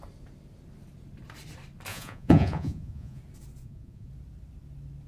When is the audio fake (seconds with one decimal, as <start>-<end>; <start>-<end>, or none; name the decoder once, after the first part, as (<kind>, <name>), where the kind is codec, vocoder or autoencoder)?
1.9-3.2 (vocoder, Vocos); 3.6-4.1